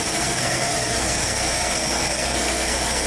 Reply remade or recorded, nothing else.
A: remade